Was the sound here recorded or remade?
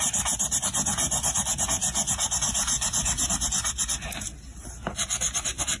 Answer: recorded